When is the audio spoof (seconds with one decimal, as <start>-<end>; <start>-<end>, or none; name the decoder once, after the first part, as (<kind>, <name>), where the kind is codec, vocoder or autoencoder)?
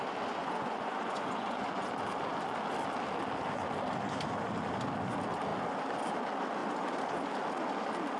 0.4-1.9 (vocoder, Vocos)